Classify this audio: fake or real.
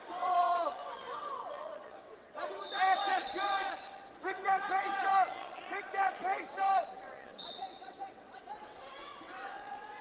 fake